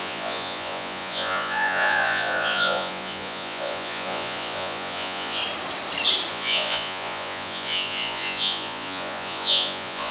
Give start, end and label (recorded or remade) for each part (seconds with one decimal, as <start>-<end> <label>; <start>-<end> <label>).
0.0-5.4 remade; 5.4-6.3 recorded; 6.3-10.1 remade